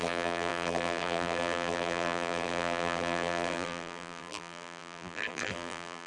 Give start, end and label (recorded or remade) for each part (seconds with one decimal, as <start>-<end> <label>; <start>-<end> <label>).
0.0-6.1 remade

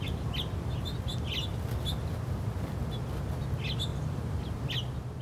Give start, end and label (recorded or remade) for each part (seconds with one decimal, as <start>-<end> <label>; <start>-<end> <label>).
0.0-3.9 recorded; 3.9-4.6 remade; 4.6-5.2 recorded

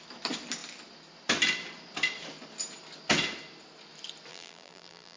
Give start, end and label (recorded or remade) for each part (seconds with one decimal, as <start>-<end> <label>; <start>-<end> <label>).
0.0-4.3 recorded; 4.3-5.2 remade

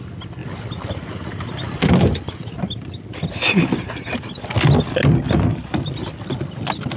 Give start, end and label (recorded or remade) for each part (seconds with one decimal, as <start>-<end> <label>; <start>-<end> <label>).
0.0-7.0 recorded

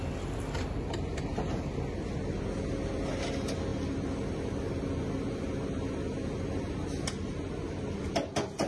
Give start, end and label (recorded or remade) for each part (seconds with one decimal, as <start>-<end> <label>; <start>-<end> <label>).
0.0-8.7 recorded